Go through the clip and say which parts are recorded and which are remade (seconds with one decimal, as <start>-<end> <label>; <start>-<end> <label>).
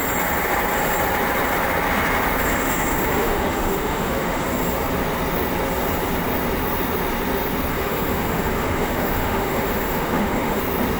0.0-2.5 recorded; 2.5-4.4 remade; 4.4-7.7 recorded; 7.7-10.6 remade; 10.6-11.0 recorded